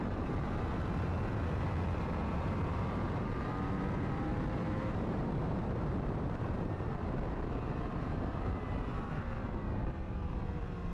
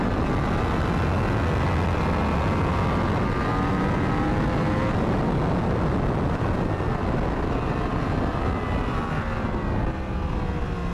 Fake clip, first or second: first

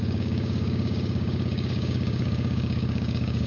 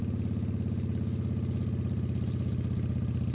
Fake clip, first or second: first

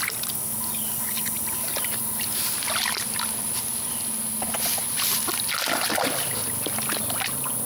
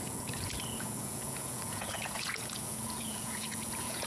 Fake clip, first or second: second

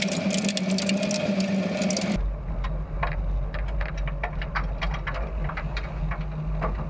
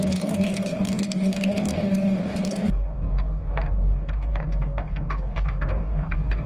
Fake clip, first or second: second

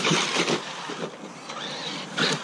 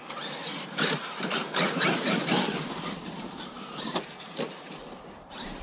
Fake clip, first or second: second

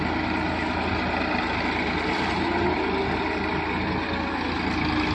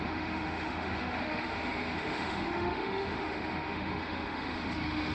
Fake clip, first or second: second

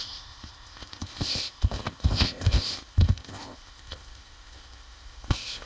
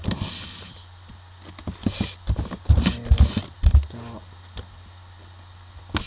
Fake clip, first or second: first